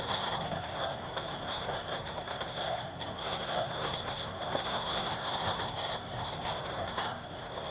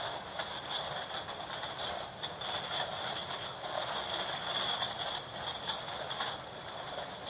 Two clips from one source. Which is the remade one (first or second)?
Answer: first